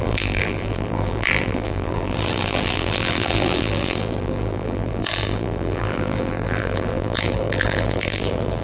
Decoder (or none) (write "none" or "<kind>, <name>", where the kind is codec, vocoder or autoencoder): vocoder, BigVGAN v2